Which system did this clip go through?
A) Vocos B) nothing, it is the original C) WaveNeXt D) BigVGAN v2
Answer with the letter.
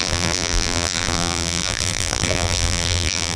D